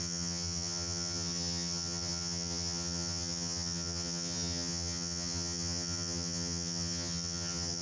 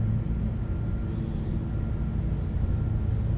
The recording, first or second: second